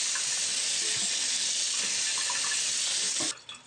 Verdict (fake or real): real